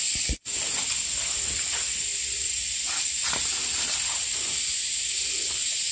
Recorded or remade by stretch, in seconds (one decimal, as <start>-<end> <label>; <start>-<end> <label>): 0.0-2.1 recorded; 2.1-5.9 remade

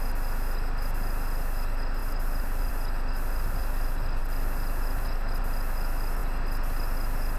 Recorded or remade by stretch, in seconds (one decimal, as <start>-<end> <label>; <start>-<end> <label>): 0.0-2.0 recorded; 2.0-2.7 remade; 2.7-7.4 recorded

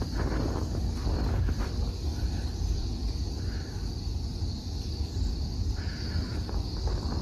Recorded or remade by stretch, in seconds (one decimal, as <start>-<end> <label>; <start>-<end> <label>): 0.0-7.2 recorded

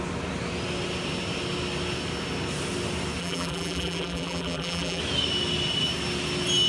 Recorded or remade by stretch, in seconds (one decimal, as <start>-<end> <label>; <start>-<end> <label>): 0.0-3.2 recorded; 3.2-5.0 remade; 5.0-6.7 recorded

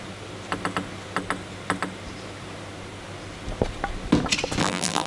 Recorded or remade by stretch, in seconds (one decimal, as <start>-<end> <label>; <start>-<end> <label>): 0.0-4.6 recorded; 4.6-5.1 remade

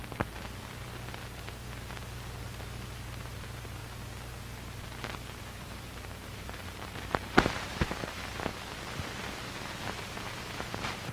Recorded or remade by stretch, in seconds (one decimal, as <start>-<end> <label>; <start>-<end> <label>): 0.0-3.2 recorded; 3.2-3.8 remade; 3.8-5.4 recorded; 5.4-8.5 remade; 8.5-9.6 recorded; 9.6-11.1 remade

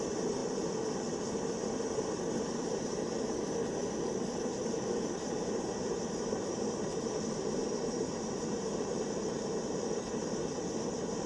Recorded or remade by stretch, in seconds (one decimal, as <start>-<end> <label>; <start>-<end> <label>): 0.0-3.8 recorded; 3.8-7.0 remade; 7.0-7.6 recorded; 7.6-10.0 remade; 10.0-11.3 recorded